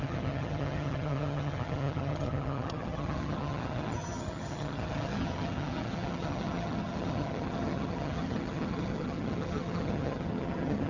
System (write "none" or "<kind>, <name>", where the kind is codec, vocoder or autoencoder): vocoder, HiFi-GAN